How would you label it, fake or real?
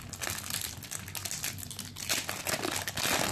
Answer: real